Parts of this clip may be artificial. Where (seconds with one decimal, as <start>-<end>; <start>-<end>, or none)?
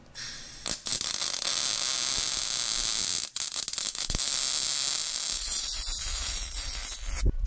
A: 3.8-4.4